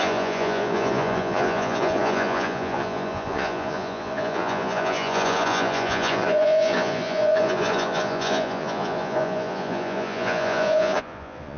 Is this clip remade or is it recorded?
remade